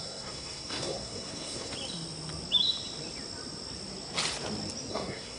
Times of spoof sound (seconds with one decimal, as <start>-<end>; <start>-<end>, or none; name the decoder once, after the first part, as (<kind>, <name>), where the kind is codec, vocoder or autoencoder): 0.0-1.7 (codec, SNAC); 4.9-5.4

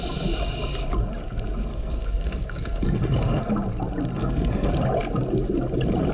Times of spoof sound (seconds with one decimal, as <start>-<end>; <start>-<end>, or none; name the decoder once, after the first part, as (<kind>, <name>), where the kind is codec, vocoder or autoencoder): 1.7-3.5 (codec, SNAC); 4.1-4.7

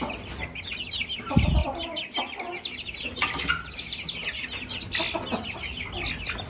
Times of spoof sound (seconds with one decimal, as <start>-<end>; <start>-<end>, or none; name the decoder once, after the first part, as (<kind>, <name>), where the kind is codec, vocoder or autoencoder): none

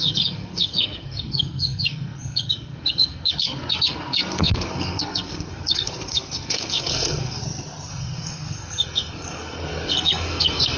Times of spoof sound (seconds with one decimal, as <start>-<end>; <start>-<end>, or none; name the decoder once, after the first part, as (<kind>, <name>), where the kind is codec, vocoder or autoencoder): 0.0-7.4 (codec, SNAC); 7.9-10.8

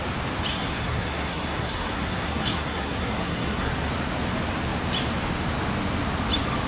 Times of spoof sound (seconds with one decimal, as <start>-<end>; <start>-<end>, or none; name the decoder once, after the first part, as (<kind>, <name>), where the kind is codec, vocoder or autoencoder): 0.5-3.7 (codec, SNAC)

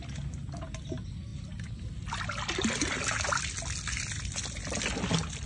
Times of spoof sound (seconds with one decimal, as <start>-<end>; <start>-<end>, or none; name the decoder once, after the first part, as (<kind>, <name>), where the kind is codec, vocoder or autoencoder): none

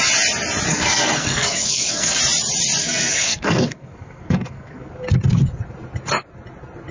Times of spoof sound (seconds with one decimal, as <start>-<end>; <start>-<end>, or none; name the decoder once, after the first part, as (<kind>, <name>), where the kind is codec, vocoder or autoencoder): 0.7-2.2 (codec, SNAC); 2.8-4.9